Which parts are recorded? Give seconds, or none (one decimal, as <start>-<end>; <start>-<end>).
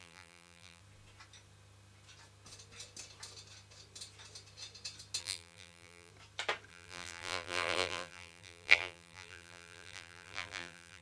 0.8-5.2; 6.1-6.7